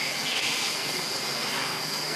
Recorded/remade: remade